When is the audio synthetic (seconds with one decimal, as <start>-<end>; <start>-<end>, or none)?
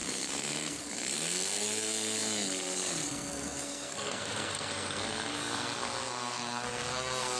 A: 0.0-7.4